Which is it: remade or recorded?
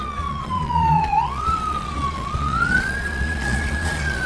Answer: remade